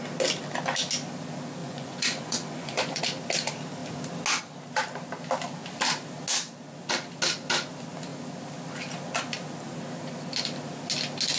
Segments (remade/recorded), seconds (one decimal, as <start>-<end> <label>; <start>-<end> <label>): 0.0-1.6 recorded; 1.6-3.0 remade; 3.0-11.4 recorded